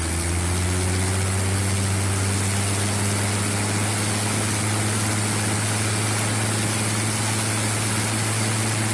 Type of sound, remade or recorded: recorded